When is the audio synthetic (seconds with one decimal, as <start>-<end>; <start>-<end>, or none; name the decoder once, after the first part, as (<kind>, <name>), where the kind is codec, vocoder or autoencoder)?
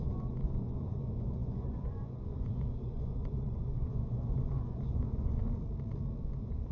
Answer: 0.0-5.4 (vocoder, Vocos); 6.2-6.7